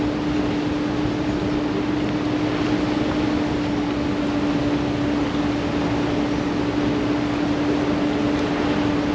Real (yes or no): yes